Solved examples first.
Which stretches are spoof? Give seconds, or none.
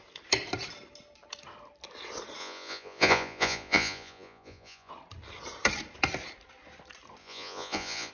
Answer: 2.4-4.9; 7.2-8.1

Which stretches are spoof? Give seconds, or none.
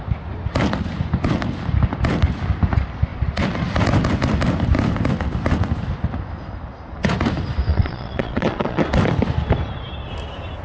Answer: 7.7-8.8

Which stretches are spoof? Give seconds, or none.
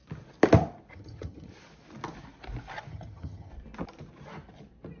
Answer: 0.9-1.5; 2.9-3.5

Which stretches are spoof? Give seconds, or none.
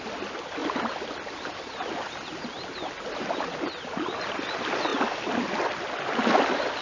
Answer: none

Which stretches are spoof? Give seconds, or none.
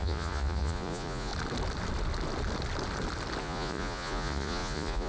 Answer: 0.0-1.3; 3.4-5.1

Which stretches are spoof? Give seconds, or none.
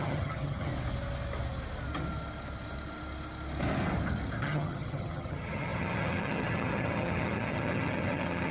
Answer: 0.0-0.7; 4.4-8.5